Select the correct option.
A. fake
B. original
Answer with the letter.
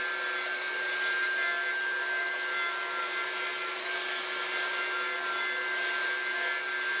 B